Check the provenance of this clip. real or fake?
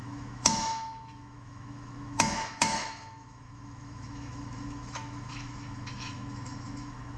fake